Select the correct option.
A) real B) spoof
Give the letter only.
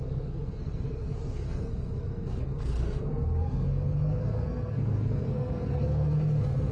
B